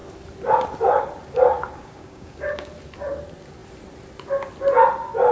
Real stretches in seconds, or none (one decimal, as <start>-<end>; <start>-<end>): 0.0-1.8; 2.7-5.3